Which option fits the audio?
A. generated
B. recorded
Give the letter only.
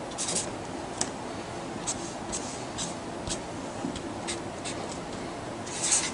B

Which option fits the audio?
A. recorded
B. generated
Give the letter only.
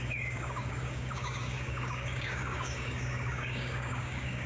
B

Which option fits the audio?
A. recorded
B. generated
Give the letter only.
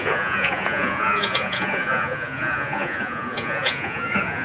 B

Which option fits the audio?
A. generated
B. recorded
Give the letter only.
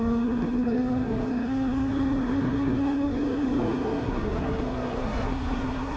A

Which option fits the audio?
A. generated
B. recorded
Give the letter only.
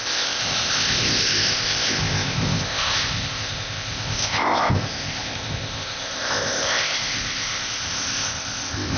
A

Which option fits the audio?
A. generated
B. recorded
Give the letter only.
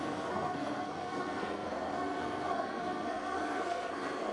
A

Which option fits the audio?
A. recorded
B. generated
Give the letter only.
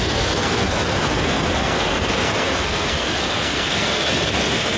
B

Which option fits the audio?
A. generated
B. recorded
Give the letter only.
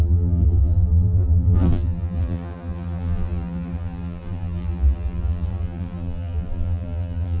A